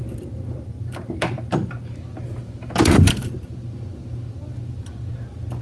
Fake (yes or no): yes